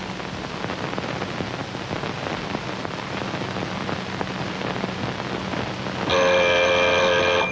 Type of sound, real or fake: real